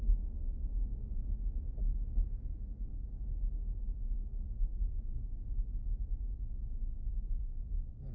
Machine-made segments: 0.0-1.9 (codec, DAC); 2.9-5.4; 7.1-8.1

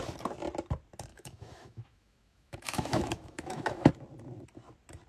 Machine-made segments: 1.1-3.9 (autoencoder, DAC-VAE)

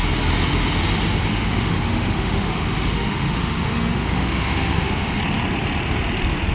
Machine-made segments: 1.3-5.2 (autoencoder, DAC-VAE)

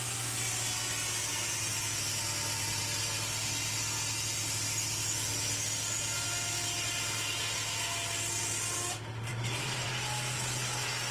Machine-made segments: 9.3-9.9 (vocoder, BigVGAN v2)

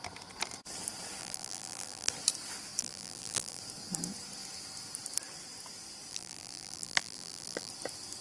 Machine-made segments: 1.2-2.1 (vocoder, BigVGAN v2); 2.8-3.6; 6.1-7.7